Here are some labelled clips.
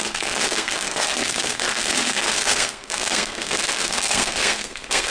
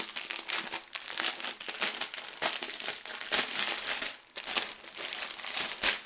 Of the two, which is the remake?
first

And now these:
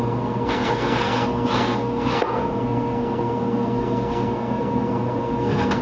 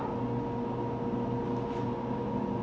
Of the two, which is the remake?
first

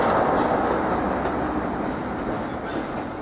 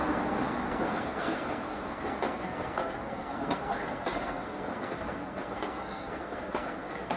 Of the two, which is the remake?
second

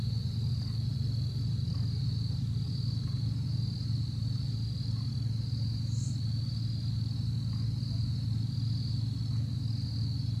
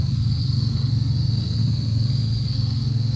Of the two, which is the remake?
second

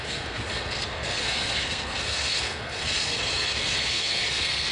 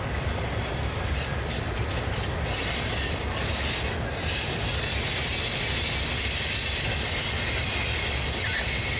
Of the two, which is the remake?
first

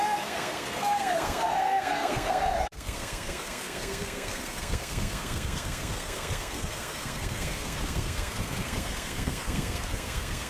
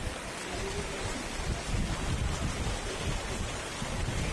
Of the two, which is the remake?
first